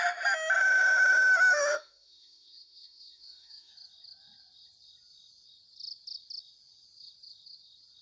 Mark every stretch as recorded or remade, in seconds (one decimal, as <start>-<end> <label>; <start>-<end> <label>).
0.0-0.6 recorded; 0.6-3.7 remade; 3.7-8.0 recorded